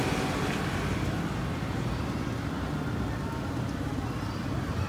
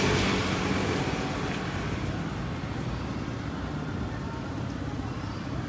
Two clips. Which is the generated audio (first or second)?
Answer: second